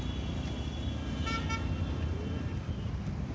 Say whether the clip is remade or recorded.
recorded